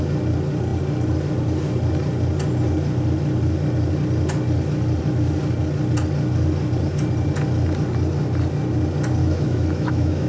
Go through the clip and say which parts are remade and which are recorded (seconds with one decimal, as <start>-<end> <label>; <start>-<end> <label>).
0.0-9.2 recorded; 9.2-10.3 remade